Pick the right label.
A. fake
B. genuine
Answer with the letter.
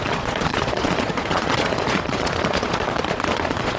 A